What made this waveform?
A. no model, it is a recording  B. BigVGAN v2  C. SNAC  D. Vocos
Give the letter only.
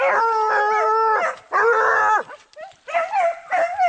A